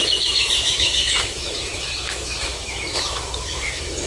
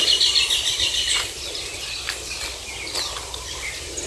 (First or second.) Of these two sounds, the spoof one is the first